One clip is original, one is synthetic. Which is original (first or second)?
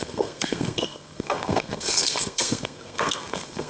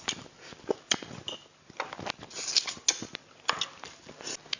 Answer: second